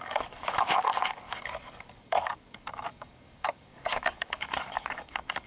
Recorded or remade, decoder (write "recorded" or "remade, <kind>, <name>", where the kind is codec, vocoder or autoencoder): remade, codec, DAC